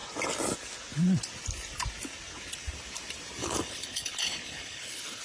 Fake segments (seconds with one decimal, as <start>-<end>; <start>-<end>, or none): 3.4-5.2